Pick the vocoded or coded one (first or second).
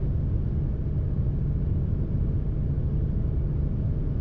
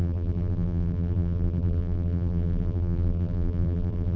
second